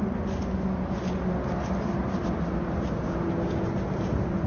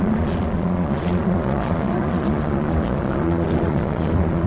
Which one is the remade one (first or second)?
second